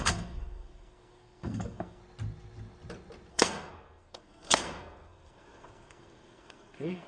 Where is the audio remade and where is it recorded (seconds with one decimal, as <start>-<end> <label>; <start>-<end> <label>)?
0.0-2.0 remade; 2.0-3.3 recorded; 3.3-7.1 remade